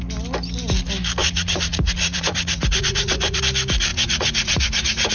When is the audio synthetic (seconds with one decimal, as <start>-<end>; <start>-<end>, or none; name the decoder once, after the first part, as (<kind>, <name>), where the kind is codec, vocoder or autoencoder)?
1.2-3.4 (vocoder, Vocos); 3.9-5.1